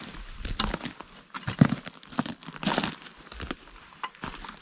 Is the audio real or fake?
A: real